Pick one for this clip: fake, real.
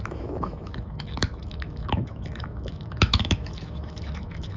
fake